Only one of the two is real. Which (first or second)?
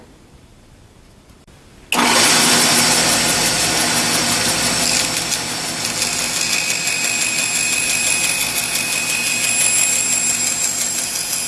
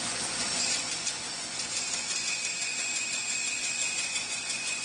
first